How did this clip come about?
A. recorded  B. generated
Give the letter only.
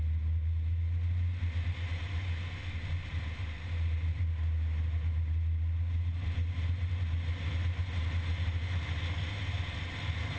A